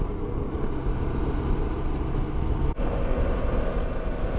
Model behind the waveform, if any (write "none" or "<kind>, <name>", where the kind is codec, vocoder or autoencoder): none